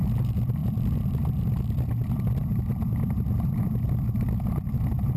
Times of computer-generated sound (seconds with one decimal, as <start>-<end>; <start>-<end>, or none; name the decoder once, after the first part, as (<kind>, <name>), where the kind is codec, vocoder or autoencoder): none